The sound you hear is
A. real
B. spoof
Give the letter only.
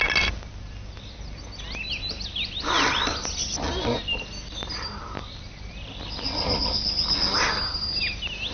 A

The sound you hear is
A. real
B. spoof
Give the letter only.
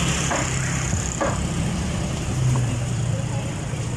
B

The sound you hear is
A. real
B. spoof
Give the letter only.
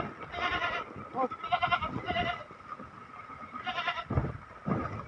A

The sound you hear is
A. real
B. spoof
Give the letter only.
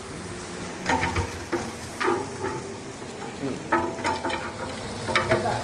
A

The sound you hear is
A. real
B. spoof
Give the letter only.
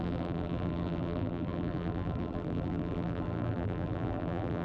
B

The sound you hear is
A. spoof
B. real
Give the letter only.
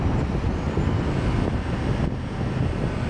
B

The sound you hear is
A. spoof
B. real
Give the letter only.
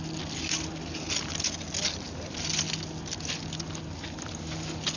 B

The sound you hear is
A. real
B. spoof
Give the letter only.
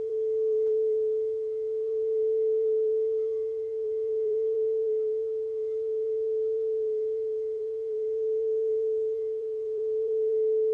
B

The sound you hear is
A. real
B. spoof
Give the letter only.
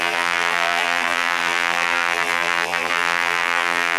B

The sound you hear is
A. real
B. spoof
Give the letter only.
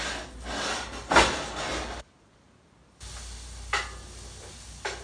A